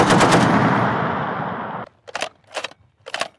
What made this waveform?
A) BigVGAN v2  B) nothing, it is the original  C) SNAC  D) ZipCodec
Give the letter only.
A